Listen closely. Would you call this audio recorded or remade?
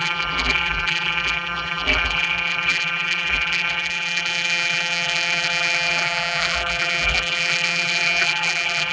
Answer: remade